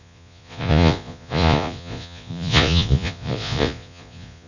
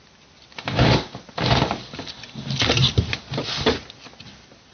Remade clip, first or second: first